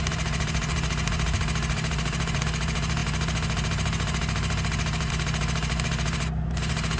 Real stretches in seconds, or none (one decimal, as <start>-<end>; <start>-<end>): 0.0-7.0